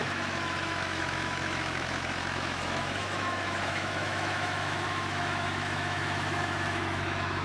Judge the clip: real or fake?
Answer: fake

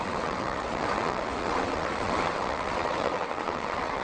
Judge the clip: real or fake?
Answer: fake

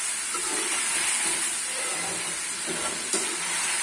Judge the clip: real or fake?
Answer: fake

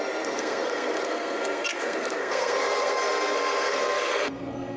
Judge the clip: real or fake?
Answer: fake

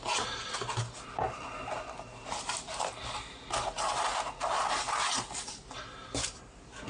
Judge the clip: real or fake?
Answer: real